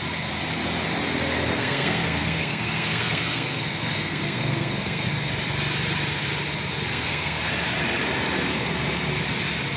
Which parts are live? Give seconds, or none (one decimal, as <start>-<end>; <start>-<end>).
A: 0.0-1.5; 5.1-6.8; 7.5-9.8

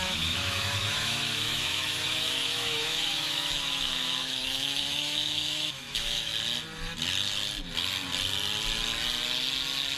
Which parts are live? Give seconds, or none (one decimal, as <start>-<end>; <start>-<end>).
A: 6.3-10.0

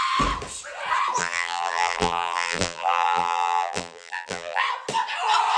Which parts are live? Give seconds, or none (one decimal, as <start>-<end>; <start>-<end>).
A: 0.0-1.2; 4.6-5.6

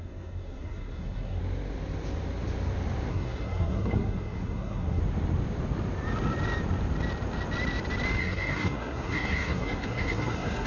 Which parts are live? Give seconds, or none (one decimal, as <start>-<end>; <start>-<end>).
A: 1.4-3.1; 5.0-8.2

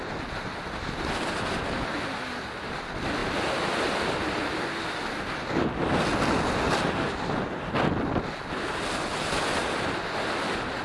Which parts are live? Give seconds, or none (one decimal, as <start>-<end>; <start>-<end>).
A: 0.0-10.8

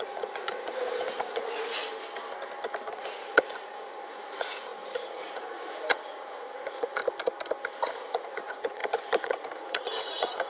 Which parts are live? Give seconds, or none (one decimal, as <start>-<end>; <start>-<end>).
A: 1.8-2.9; 7.0-7.9